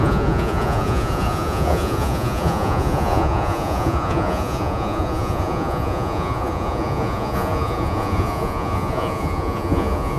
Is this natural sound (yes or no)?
no